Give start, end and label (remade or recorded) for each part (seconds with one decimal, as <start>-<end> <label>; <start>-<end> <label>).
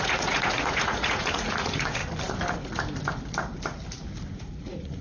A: 0.0-2.0 remade; 2.0-4.4 recorded; 4.4-5.0 remade